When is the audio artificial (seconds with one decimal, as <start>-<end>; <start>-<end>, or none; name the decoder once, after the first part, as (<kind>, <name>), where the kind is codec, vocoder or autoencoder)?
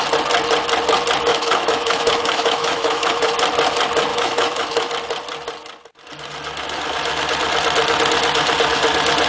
1.3-3.3 (autoencoder, DAC-VAE); 4.1-4.9